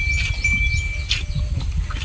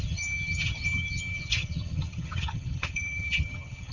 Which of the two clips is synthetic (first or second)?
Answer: second